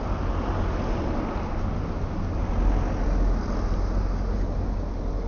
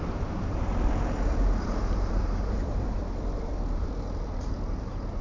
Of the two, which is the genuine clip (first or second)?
first